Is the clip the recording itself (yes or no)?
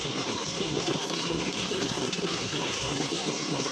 no